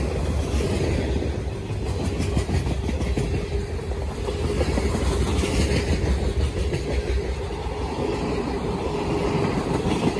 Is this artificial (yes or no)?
no